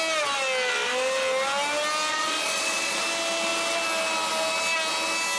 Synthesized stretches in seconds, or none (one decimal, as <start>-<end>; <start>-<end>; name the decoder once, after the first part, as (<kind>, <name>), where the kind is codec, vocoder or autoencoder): 2.1-3.0 (vocoder, Vocos)